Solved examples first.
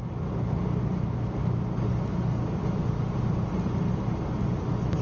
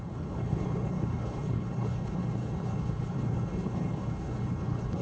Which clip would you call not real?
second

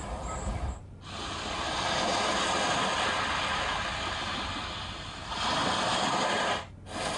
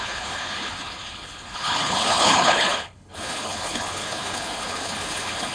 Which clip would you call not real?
second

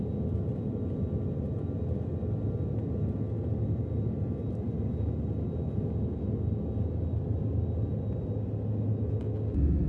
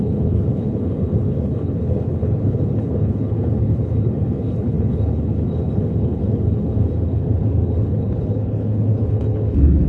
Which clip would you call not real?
second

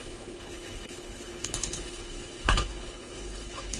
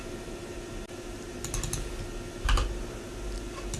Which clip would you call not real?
first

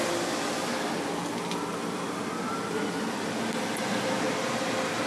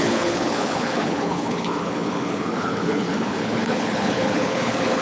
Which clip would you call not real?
second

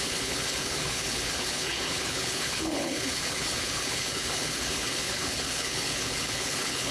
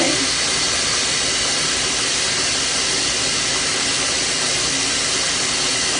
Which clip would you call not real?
first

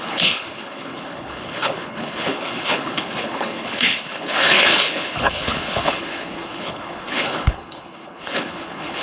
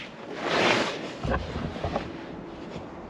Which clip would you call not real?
first